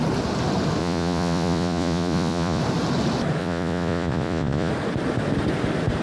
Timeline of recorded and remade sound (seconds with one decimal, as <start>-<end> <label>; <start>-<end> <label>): 0.0-0.8 recorded; 0.8-2.6 remade; 2.6-3.4 recorded; 3.4-4.7 remade; 4.7-6.0 recorded